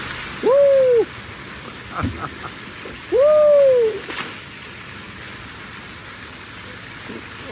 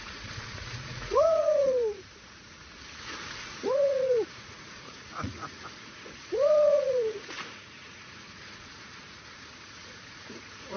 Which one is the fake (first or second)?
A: second